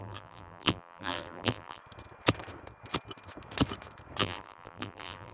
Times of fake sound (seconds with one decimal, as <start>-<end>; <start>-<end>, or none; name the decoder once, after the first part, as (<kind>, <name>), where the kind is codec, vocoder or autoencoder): 0.0-1.8 (vocoder, BigVGAN v2); 4.2-5.3